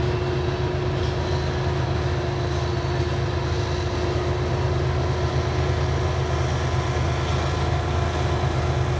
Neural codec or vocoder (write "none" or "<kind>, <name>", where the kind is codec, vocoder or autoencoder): none